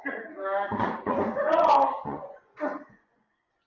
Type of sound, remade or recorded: remade